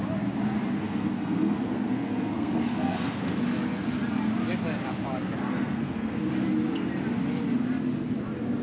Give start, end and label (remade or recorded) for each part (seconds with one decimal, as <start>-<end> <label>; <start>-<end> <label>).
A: 0.0-0.8 recorded; 0.8-3.4 remade; 3.4-5.4 recorded; 5.4-6.2 remade; 6.2-8.6 recorded